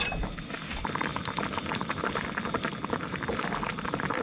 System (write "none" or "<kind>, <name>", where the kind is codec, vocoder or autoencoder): none